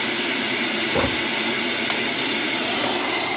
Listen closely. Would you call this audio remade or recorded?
recorded